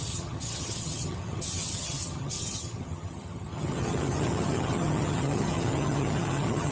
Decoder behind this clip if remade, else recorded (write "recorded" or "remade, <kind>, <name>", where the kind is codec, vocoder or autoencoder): remade, vocoder, HiFi-GAN